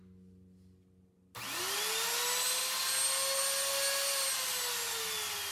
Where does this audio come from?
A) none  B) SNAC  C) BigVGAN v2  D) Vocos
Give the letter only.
A